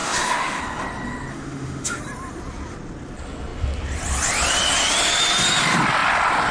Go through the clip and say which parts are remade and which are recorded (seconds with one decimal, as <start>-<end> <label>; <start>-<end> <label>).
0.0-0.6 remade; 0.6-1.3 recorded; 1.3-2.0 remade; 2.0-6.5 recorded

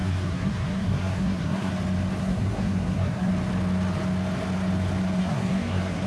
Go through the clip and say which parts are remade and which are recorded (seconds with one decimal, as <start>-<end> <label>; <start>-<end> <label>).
0.0-1.7 remade; 1.7-2.2 recorded; 2.2-3.3 remade; 3.3-5.2 recorded; 5.2-6.1 remade

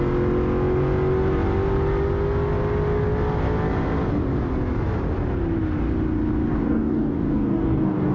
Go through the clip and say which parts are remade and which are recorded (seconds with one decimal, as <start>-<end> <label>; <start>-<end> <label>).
0.0-6.5 recorded; 6.5-8.1 remade

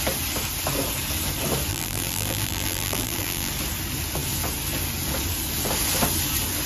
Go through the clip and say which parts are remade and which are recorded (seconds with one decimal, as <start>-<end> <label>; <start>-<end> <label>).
0.0-1.7 recorded; 1.7-3.5 remade; 3.5-6.7 recorded

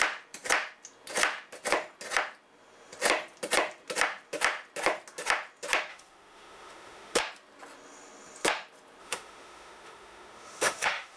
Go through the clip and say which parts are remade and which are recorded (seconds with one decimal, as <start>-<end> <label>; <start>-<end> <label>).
0.0-5.9 recorded; 5.9-7.2 remade; 7.2-9.0 recorded; 9.0-11.2 remade

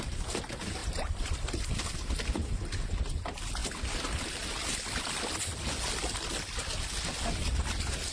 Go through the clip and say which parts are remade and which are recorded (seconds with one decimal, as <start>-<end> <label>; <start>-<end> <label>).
0.0-0.8 recorded; 0.8-1.3 remade; 1.3-8.1 recorded